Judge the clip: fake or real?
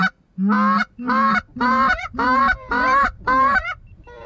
fake